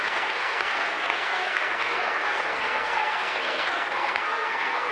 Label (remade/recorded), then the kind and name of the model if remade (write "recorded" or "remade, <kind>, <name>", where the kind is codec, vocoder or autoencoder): remade, codec, SNAC